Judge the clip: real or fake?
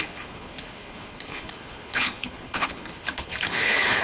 fake